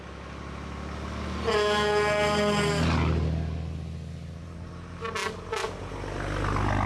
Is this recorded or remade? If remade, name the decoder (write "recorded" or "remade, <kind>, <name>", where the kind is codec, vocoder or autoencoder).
recorded